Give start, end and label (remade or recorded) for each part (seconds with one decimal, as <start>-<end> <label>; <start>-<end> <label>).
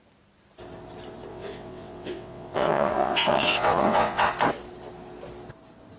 0.0-1.3 recorded; 1.3-4.3 remade; 4.3-6.0 recorded